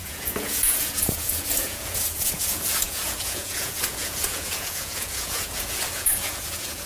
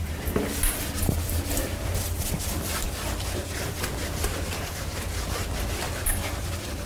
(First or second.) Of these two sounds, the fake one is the first